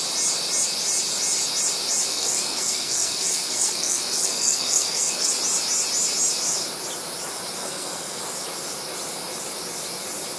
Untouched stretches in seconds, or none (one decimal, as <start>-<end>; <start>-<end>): 0.0-2.1; 5.3-7.6; 8.2-10.4